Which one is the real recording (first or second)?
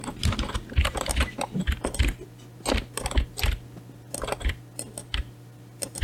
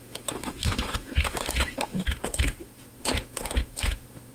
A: first